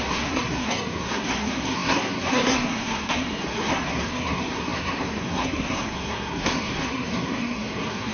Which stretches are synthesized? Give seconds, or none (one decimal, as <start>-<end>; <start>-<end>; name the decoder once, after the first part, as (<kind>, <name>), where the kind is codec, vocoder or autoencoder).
0.0-8.1 (codec, SNAC)